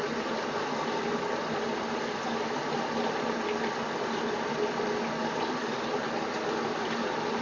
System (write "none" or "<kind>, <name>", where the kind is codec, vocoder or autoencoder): none